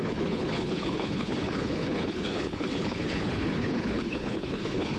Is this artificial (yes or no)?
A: yes